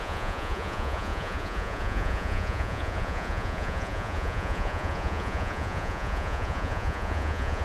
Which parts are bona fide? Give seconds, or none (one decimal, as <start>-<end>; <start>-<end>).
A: none